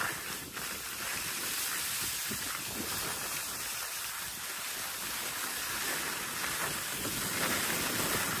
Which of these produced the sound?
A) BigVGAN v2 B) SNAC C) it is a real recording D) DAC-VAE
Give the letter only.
C